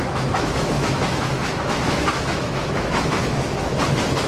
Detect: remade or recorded remade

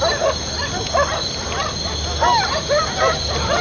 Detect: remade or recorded recorded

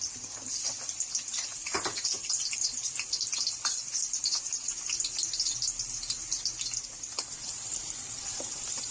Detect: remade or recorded recorded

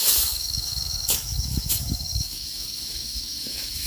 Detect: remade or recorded remade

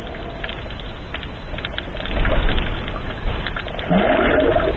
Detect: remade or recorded recorded